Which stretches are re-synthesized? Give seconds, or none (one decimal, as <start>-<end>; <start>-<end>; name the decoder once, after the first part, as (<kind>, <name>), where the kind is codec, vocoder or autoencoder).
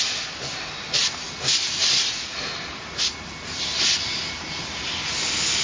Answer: none